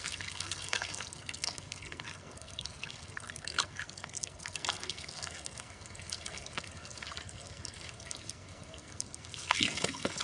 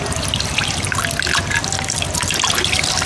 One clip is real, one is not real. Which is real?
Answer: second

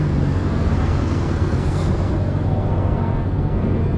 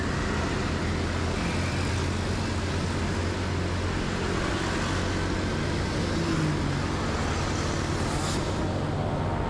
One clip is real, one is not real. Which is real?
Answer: second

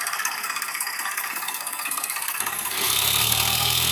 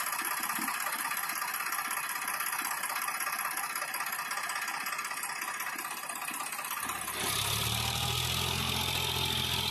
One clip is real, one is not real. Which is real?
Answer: second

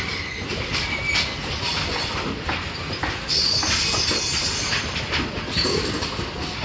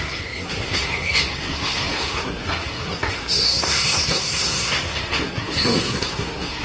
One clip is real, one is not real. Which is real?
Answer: first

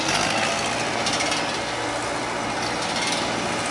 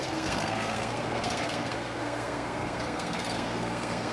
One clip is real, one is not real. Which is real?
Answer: first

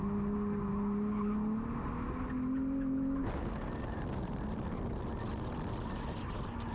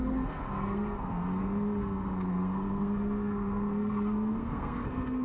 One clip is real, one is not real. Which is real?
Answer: first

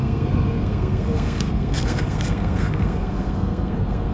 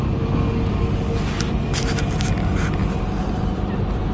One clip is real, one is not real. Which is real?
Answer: second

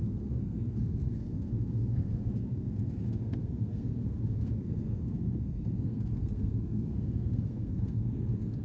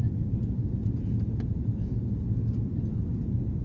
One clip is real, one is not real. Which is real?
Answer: second